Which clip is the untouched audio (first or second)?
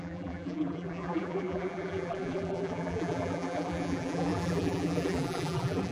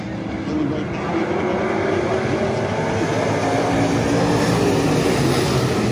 second